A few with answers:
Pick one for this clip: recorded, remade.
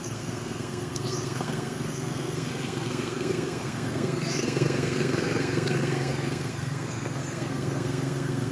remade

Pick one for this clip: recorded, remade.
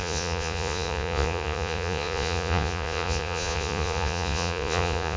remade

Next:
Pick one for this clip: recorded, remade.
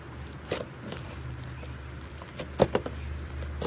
recorded